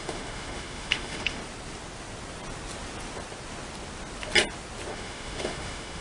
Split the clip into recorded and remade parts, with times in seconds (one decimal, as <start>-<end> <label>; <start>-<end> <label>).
0.0-1.4 remade; 1.4-4.9 recorded; 4.9-6.0 remade